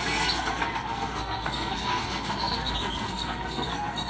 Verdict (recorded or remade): remade